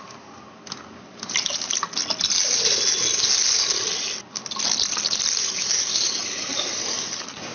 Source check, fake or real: real